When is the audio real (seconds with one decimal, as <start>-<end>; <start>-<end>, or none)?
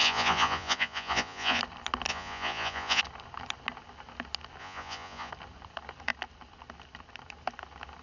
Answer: 1.6-2.1; 3.0-4.6; 5.3-8.0